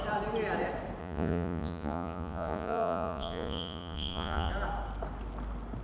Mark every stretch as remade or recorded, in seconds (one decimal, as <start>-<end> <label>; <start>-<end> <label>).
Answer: 0.0-1.0 recorded; 1.0-4.5 remade; 4.5-5.8 recorded

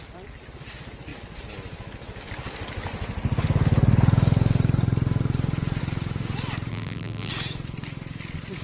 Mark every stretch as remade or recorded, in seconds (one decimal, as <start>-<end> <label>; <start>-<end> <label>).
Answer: 0.0-6.7 recorded; 6.7-7.3 remade; 7.3-8.6 recorded